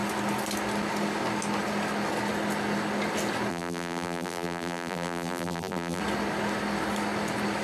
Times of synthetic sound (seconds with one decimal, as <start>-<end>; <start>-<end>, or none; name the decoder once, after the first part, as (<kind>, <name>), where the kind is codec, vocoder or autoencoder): 3.5-6.0 (vocoder, BigVGAN v2)